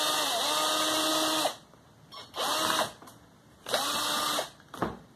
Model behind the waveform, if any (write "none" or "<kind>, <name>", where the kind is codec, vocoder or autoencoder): none